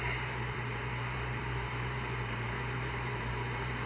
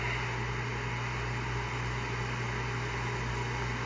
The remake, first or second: first